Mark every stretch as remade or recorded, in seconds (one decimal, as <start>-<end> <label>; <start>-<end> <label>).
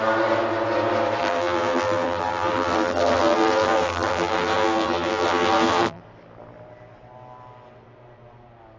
0.0-1.2 recorded; 1.2-6.0 remade; 6.0-8.8 recorded